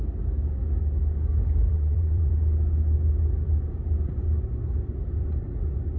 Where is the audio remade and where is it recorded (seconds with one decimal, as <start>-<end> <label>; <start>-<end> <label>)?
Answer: 0.0-1.7 recorded; 1.7-2.3 remade; 2.3-6.0 recorded